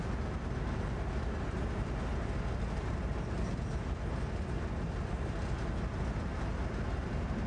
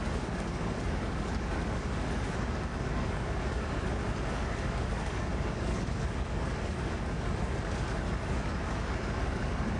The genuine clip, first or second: first